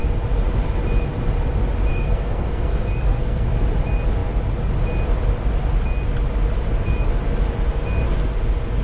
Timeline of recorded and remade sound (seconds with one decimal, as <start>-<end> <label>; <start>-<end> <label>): 0.0-1.9 recorded; 1.9-3.5 remade; 3.5-8.8 recorded